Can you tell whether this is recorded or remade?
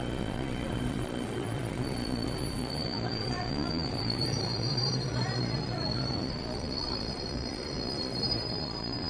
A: remade